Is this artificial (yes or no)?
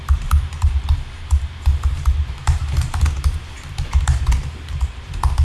yes